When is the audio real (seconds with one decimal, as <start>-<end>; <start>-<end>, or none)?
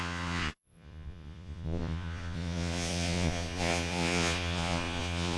none